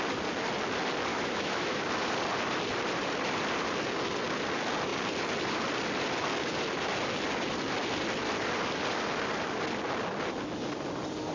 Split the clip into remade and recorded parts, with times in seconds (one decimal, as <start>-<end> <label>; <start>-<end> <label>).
0.0-1.1 recorded; 1.1-1.8 remade; 1.8-11.3 recorded